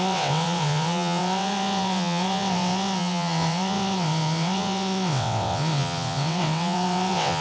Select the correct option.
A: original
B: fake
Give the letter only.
B